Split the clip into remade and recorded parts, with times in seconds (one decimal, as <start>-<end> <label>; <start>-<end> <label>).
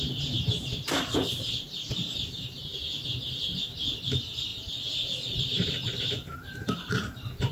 0.0-2.7 remade; 2.7-3.6 recorded; 3.6-4.5 remade; 4.5-5.3 recorded; 5.3-7.5 remade